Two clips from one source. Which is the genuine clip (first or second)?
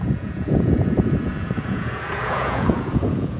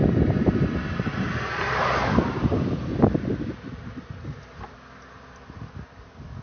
second